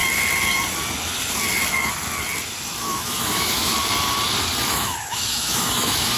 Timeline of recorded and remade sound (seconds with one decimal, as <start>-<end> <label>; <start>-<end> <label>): 0.0-2.8 recorded; 2.8-3.7 remade; 3.7-4.7 recorded; 4.7-6.2 remade